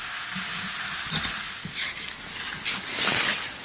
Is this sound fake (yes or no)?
no